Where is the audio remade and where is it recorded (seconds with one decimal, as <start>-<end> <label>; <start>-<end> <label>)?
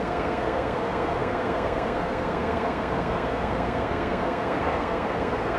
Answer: 0.0-5.6 remade